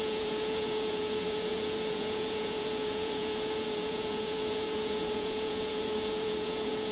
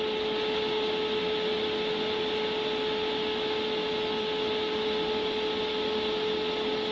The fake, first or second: first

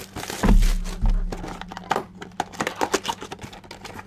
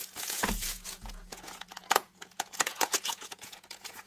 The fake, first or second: second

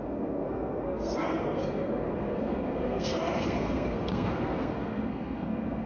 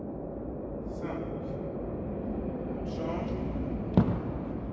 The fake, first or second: first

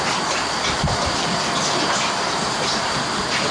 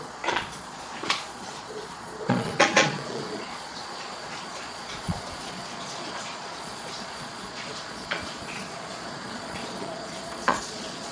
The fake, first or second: second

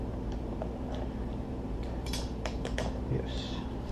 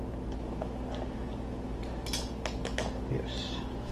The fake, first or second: first